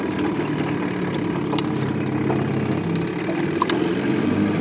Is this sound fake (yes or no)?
no